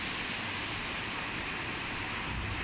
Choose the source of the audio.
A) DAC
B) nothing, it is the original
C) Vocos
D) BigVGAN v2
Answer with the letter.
B